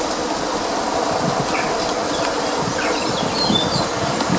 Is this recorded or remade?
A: recorded